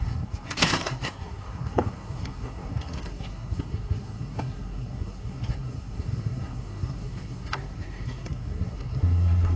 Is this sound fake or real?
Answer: fake